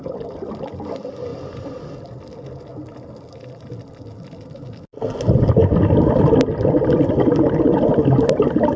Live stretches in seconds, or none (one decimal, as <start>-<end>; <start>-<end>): 0.0-8.8